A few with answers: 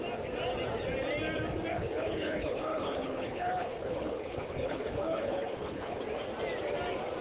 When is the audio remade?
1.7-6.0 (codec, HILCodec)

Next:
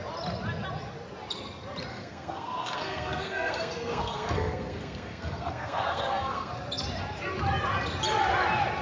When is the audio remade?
1.9-6.5 (codec, SNAC)

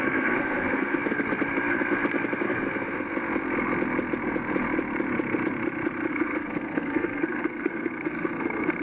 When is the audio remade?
0.0-1.0 (codec, SNAC); 6.1-8.8

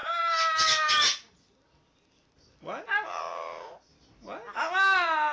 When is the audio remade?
none